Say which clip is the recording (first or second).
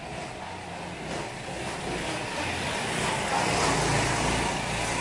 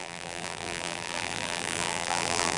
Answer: first